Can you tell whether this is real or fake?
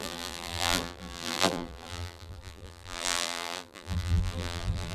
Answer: fake